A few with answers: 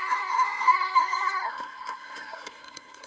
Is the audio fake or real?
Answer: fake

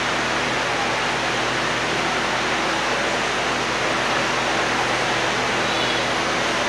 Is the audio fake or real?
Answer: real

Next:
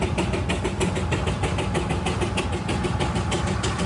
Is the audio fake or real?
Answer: real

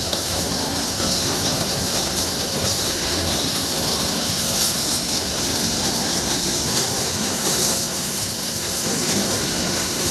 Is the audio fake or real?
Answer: fake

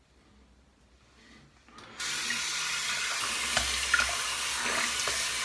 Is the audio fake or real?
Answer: real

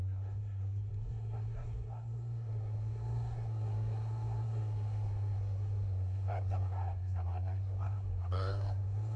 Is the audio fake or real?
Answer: fake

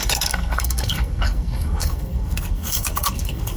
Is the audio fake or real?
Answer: fake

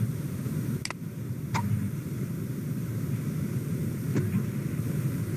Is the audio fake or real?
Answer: real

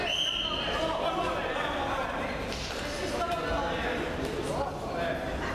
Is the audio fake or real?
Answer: real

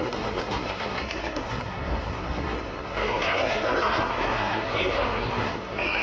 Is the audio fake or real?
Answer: fake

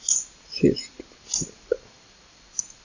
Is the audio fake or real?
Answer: real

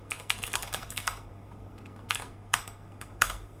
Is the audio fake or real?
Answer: fake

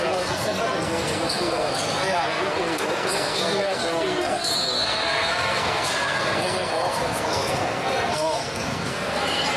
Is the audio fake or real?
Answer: fake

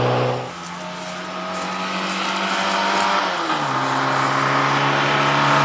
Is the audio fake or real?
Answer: real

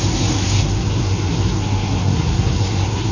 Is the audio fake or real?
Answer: fake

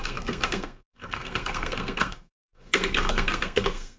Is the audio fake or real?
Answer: fake